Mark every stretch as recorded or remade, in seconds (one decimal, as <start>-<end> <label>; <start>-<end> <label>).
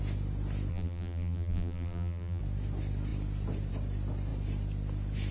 0.0-0.7 recorded; 0.7-2.4 remade; 2.4-5.3 recorded